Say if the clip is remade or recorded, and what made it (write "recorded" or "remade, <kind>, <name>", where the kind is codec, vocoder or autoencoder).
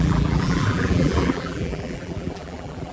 remade, vocoder, BigVGAN v2